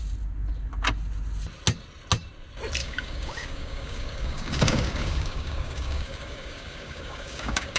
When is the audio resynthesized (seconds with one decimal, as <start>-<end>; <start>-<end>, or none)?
2.8-7.8